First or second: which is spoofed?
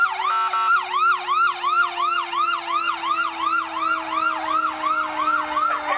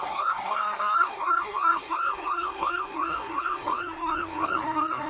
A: second